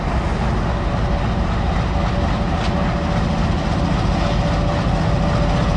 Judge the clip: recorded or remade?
recorded